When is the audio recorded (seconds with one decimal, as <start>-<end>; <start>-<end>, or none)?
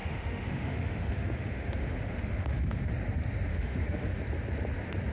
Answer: 2.9-3.5; 4.2-5.1